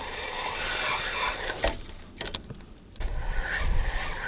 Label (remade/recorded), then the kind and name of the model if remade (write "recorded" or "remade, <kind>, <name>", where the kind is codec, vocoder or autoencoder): recorded